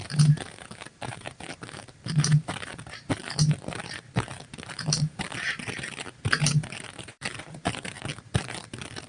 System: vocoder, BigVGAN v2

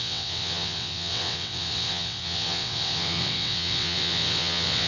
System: vocoder, WaveNeXt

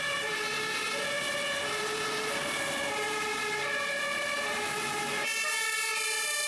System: none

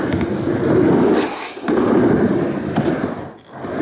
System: none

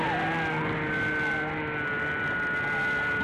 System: none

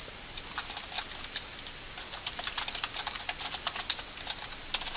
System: none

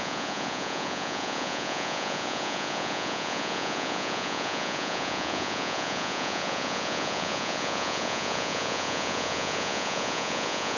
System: vocoder, Vocos